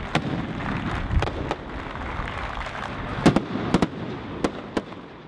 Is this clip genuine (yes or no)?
yes